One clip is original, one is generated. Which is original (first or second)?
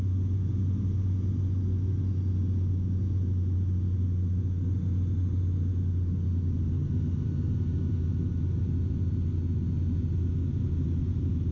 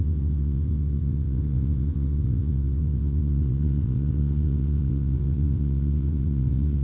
first